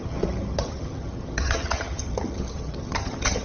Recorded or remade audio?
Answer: remade